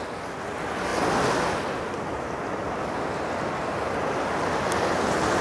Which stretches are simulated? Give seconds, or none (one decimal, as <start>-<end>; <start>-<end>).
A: none